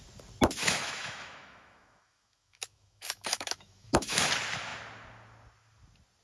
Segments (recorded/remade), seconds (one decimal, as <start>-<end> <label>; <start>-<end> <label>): 0.0-0.6 recorded; 0.6-4.3 remade; 4.3-6.2 recorded